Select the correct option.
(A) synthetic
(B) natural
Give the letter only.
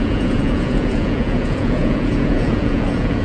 A